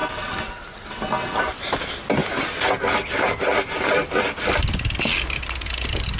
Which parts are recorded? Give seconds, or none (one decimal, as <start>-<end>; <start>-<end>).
0.0-6.2